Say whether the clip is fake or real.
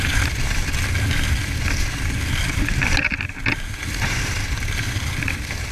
real